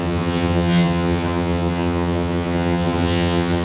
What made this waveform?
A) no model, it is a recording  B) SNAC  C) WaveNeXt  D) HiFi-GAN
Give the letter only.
D